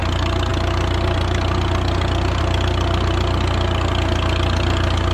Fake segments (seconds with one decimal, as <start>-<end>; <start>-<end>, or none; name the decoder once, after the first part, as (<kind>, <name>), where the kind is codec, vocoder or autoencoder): none